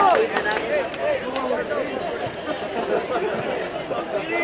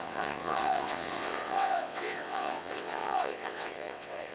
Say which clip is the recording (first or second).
first